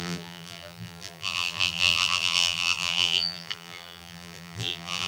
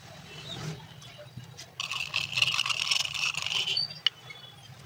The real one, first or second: second